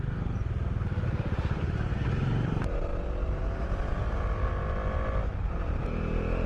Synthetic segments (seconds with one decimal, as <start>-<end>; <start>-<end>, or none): none